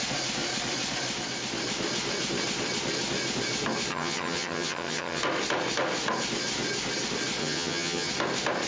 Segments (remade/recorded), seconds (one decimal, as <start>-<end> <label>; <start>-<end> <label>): 0.0-3.9 recorded; 3.9-5.2 remade; 5.2-7.4 recorded; 7.4-8.1 remade; 8.1-8.7 recorded